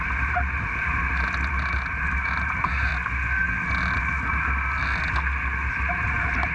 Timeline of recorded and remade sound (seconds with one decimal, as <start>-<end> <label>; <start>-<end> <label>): 0.0-2.9 remade; 2.9-5.7 recorded; 5.7-6.5 remade